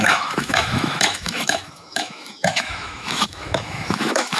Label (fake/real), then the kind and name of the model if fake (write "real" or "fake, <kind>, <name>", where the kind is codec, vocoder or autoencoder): fake, autoencoder, DAC-VAE